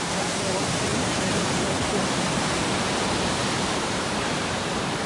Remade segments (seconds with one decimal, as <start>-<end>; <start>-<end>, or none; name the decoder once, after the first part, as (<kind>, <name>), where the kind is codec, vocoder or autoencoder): 0.0-5.1 (vocoder, BigVGAN v2)